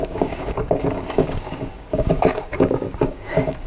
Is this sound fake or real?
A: fake